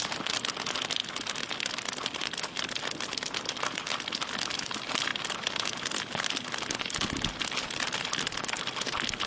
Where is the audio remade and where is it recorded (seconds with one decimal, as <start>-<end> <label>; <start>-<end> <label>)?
0.0-9.3 recorded